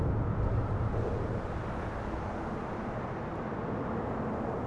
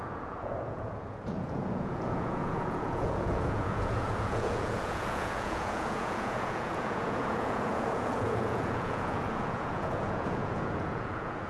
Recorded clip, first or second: first